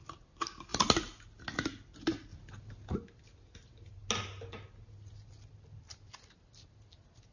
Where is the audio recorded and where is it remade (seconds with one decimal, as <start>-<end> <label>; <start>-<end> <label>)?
0.0-7.3 recorded